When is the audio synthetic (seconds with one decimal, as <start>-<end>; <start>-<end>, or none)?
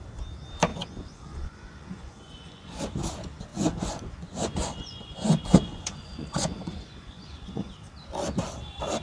0.7-2.8; 3.5-7.7